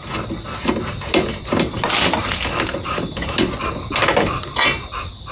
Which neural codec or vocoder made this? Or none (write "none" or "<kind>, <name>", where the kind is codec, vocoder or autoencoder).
none